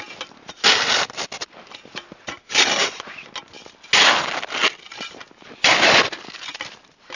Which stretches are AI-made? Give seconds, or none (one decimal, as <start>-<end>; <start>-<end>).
none